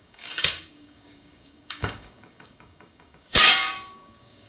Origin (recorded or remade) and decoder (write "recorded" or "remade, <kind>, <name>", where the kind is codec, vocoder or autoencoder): remade, codec, DAC